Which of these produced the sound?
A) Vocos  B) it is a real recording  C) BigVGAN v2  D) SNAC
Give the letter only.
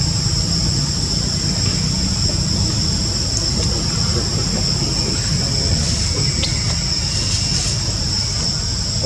B